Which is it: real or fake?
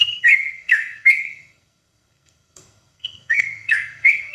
fake